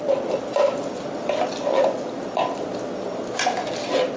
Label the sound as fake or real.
real